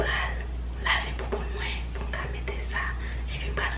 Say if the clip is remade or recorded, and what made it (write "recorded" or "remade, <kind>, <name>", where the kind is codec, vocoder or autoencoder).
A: recorded